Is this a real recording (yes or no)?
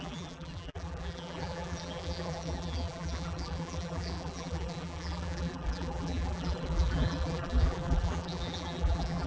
no